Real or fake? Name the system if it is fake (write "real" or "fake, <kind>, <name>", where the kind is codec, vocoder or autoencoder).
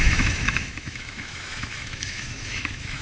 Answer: fake, autoencoder, DAC-VAE